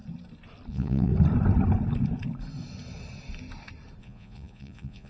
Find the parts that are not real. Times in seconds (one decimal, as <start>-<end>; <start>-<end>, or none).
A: 0.7-1.1; 4.0-5.1

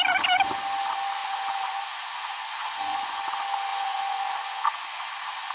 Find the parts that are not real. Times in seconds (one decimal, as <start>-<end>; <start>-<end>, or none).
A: 1.2-3.2; 3.7-5.1

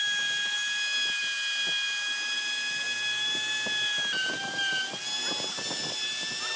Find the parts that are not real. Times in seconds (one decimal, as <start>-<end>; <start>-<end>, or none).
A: none

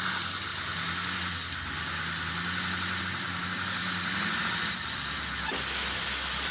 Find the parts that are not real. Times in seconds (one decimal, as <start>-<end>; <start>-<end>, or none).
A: none

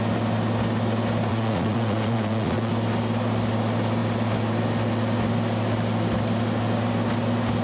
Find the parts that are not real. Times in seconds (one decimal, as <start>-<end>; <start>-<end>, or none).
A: 1.3-2.7

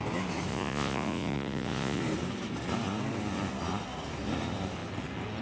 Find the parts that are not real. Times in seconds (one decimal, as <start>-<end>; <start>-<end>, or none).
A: 0.5-2.0

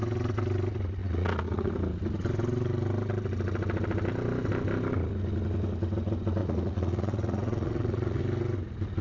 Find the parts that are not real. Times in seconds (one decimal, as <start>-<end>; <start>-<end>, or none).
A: 1.0-1.7; 6.4-8.2